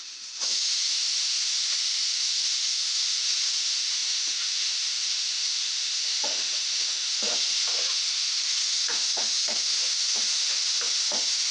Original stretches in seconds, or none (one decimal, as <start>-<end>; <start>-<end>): none